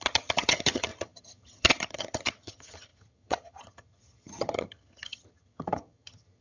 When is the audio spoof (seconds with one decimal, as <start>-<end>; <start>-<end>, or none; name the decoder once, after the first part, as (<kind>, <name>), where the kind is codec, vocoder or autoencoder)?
0.0-6.4 (vocoder, HiFi-GAN)